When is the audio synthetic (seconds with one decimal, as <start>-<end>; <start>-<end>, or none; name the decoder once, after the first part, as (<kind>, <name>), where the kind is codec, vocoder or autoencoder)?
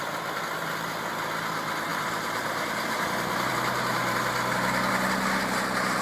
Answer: 1.9-3.5 (vocoder, BigVGAN v2)